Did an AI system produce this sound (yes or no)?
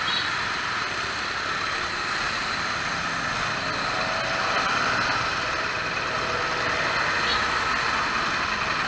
no